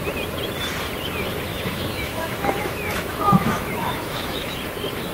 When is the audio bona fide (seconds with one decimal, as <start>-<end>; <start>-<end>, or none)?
0.0-1.5; 4.6-5.1